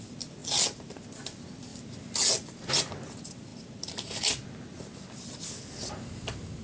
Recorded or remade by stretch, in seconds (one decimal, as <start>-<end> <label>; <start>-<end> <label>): 0.0-6.6 recorded